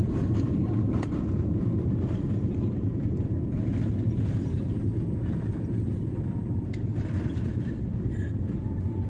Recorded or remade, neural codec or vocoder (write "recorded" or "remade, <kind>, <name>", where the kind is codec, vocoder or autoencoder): recorded